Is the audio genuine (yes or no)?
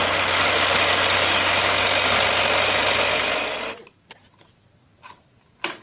yes